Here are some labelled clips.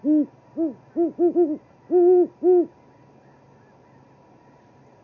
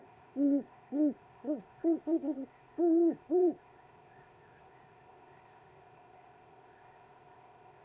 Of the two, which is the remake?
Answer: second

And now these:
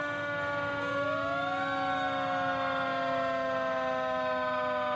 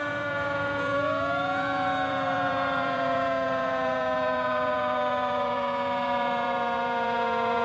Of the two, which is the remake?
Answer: second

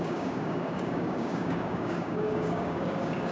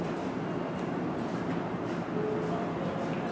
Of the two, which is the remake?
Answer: first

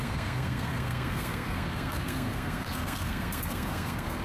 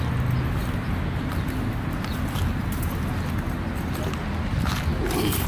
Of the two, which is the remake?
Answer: first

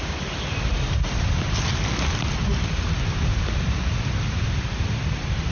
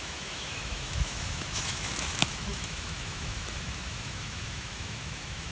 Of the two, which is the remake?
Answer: second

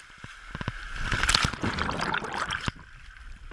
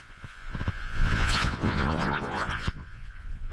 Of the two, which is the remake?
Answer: second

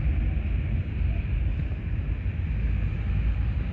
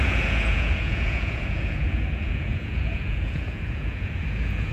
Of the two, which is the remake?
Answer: second